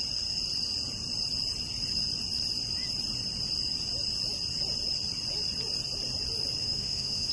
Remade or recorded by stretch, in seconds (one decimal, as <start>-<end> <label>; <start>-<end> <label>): 0.0-6.6 recorded; 6.6-7.3 remade